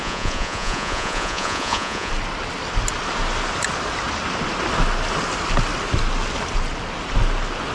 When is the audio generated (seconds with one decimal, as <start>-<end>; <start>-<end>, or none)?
0.0-2.1